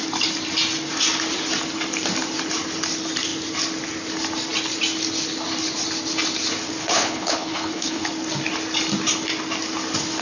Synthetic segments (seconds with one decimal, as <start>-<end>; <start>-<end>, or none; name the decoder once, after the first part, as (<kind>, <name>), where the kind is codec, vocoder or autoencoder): 6.8-8.1 (codec, HILCodec)

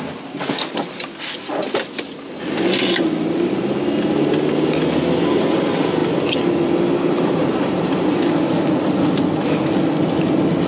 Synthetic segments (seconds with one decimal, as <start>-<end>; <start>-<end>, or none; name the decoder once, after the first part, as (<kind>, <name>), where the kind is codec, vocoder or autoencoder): none

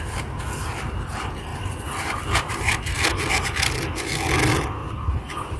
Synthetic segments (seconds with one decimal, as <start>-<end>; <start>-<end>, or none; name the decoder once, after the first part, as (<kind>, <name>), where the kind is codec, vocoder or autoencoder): 1.5-3.8 (vocoder, BigVGAN v2); 4.8-5.6